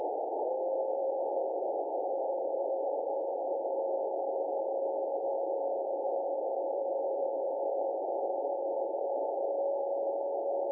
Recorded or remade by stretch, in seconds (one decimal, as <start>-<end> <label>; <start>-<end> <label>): 0.0-0.9 recorded; 0.9-3.6 remade; 3.6-5.9 recorded; 5.9-9.4 remade; 9.4-10.7 recorded